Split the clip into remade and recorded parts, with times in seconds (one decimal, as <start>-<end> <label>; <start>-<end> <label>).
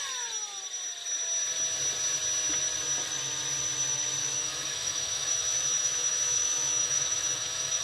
0.0-4.2 recorded; 4.2-7.8 remade